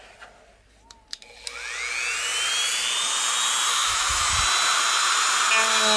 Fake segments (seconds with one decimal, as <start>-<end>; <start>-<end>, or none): 3.7-4.3